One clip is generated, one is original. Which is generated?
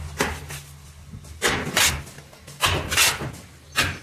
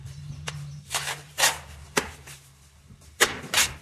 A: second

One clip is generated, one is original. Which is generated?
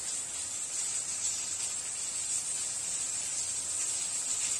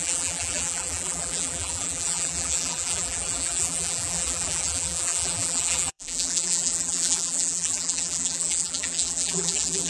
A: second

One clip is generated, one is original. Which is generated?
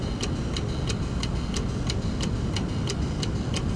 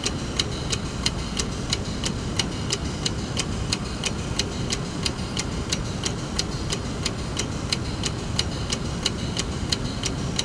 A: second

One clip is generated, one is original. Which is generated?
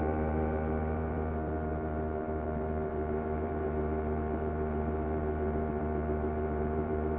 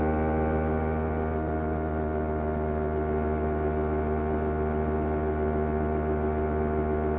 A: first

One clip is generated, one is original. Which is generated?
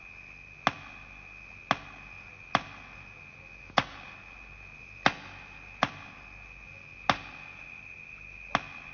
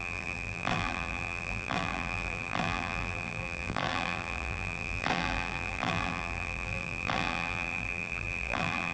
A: second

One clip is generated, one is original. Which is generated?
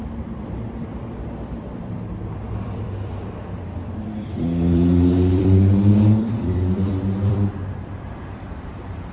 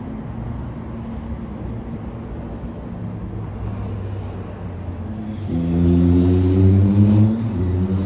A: first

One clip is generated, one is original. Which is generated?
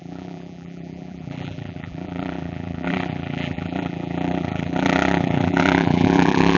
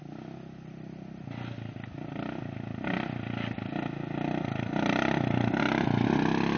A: first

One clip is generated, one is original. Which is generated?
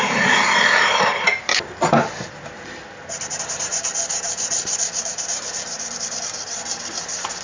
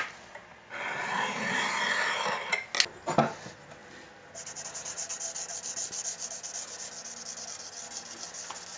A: first